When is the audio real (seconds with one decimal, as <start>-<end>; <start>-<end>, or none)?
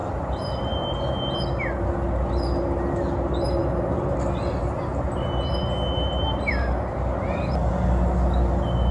1.1-8.9